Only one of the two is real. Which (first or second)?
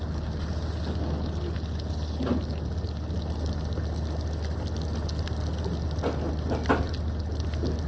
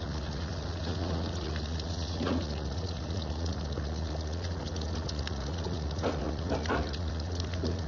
first